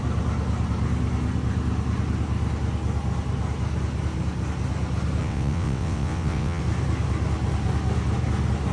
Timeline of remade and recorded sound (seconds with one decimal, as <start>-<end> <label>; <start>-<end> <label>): 0.0-5.2 recorded; 5.2-6.6 remade; 6.6-8.7 recorded